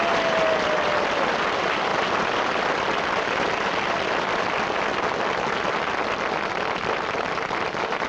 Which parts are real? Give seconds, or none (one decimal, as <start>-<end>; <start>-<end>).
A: 0.0-8.1

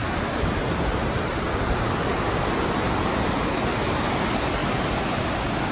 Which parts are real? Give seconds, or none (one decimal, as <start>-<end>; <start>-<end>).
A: 1.1-5.7

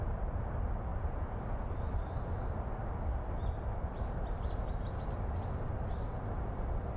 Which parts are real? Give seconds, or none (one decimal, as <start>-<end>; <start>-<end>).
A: 0.0-7.0

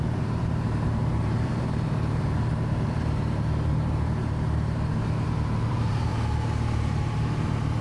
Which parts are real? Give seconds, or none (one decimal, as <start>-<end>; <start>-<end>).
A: 6.1-6.9

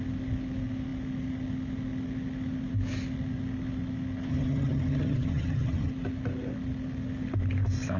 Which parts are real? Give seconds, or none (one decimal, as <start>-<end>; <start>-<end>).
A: 0.0-4.3; 5.9-8.0

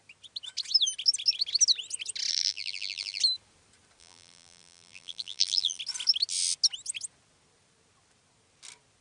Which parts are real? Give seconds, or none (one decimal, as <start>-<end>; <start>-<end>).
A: 0.0-2.3; 3.2-4.0; 5.8-9.0

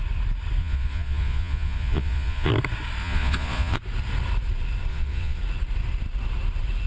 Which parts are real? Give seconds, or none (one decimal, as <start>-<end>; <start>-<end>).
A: 0.0-0.6; 2.5-3.0; 3.8-4.9; 5.4-6.9

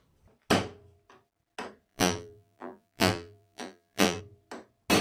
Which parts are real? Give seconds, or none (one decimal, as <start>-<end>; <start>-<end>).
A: 0.0-1.9; 4.2-5.0